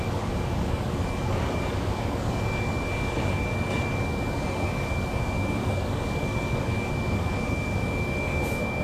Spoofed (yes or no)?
yes